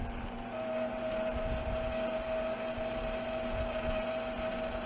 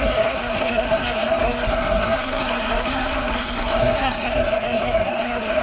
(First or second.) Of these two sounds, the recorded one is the first